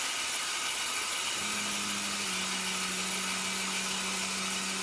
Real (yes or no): yes